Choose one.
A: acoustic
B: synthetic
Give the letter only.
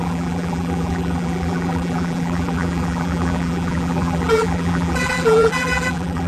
B